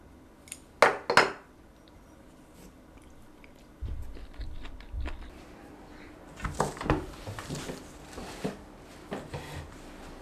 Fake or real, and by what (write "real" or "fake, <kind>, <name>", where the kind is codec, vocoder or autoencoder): real